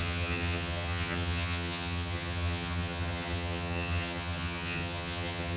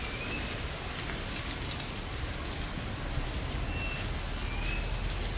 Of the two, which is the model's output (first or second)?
first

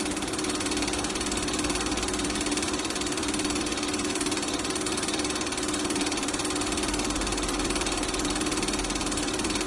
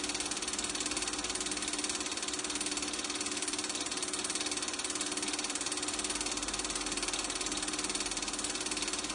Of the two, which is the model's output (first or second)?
first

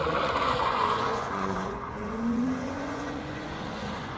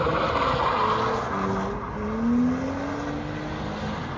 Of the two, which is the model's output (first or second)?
first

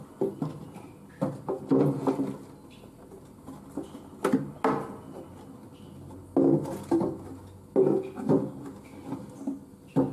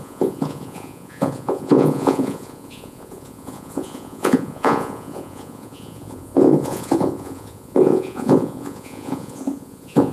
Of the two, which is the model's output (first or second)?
second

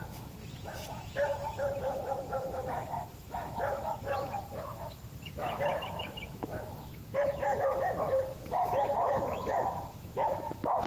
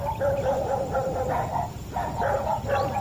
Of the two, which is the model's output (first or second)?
first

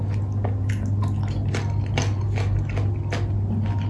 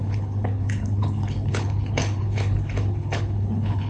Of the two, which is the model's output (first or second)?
second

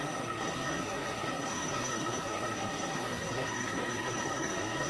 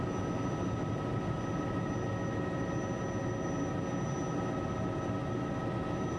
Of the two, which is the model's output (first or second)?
first